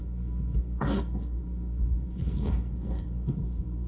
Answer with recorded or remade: remade